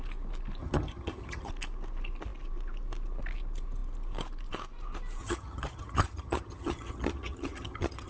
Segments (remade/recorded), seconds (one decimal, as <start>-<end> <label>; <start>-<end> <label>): 0.0-0.6 recorded; 0.6-1.5 remade; 1.5-5.2 recorded; 5.2-8.1 remade